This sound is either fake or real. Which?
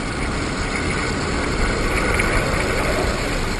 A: real